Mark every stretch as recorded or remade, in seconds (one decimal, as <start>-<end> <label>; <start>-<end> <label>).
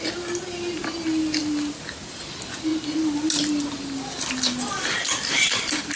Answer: 0.0-6.0 recorded